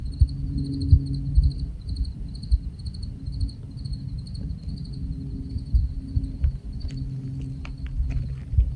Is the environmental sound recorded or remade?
recorded